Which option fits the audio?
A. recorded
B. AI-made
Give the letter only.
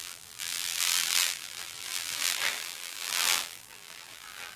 B